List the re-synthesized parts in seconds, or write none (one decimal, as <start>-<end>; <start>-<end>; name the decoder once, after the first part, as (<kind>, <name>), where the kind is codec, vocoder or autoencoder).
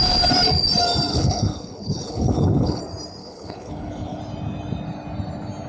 1.1-2.8 (codec, HILCodec); 3.2-4.2